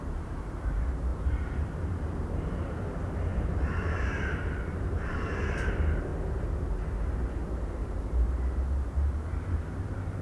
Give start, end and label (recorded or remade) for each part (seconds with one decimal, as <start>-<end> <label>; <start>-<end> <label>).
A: 0.0-6.1 remade; 6.1-7.0 recorded; 7.0-10.2 remade